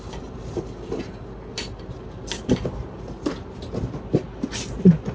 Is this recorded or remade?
recorded